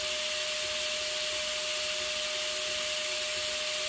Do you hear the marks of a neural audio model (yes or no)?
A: no